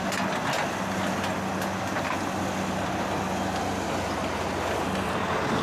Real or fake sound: real